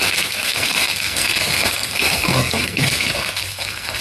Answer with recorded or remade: remade